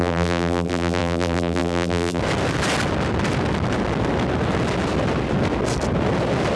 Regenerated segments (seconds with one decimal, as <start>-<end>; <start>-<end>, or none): 0.0-2.2